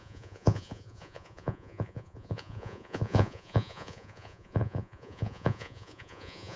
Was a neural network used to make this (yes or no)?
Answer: yes